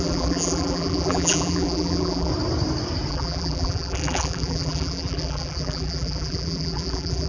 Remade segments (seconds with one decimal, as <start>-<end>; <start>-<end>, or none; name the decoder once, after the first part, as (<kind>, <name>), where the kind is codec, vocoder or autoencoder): 0.0-2.3 (vocoder, BigVGAN v2); 3.1-7.3

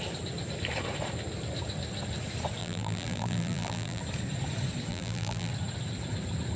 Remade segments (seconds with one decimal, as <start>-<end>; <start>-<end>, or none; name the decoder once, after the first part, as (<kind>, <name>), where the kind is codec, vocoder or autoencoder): 2.6-4.0 (vocoder, BigVGAN v2); 4.9-5.5

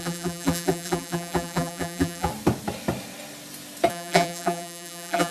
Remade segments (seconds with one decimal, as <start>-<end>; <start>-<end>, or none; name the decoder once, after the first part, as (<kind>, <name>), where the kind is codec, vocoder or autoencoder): 0.0-2.3 (vocoder, BigVGAN v2); 3.9-5.3

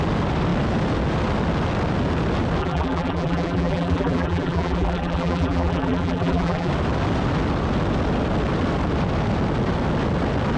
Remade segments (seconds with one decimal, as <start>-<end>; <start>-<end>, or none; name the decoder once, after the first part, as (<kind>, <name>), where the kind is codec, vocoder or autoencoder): 2.6-6.7 (vocoder, BigVGAN v2)

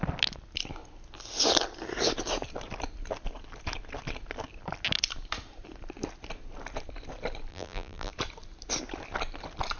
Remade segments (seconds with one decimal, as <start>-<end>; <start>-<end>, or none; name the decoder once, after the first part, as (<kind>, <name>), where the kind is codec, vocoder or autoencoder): 7.5-8.1 (vocoder, BigVGAN v2)

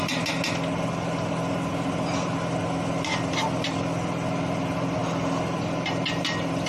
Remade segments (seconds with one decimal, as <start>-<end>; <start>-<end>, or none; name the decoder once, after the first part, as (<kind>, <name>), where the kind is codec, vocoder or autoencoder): none